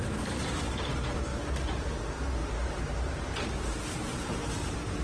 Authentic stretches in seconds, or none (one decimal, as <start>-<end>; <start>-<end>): 0.0-1.3; 2.0-2.4; 4.3-5.0